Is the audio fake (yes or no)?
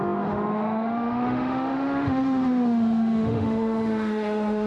yes